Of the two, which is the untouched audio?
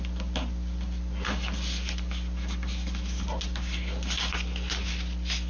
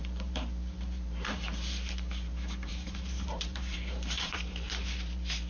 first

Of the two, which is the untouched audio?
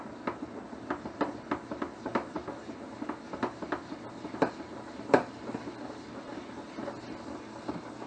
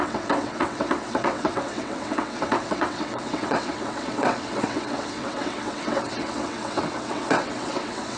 first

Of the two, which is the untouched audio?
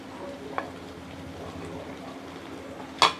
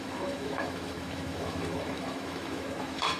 first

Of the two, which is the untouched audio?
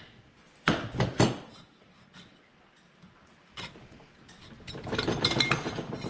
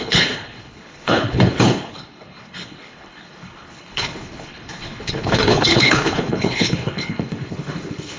first